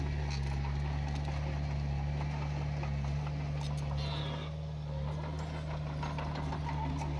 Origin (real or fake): real